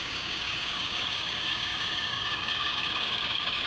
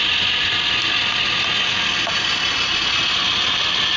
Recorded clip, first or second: second